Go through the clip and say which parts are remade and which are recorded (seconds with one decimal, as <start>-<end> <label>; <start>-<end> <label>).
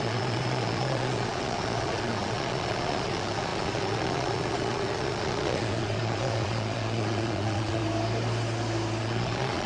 0.0-7.8 remade; 7.8-9.0 recorded; 9.0-9.7 remade